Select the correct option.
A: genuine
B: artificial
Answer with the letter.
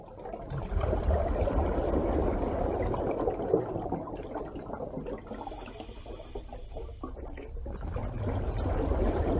A